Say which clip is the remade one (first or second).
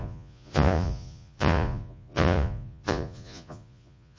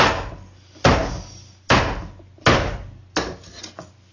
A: first